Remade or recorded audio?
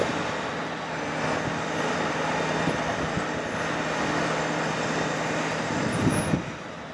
recorded